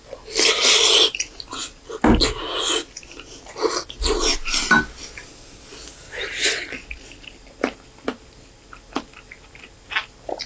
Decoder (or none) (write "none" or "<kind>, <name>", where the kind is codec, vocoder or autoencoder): none